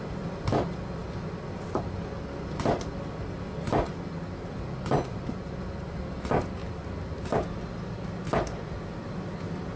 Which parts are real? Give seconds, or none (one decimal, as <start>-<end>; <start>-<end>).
0.0-9.8